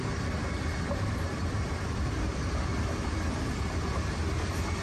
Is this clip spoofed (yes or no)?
yes